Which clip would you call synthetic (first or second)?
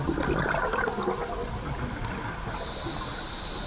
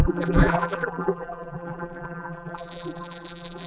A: second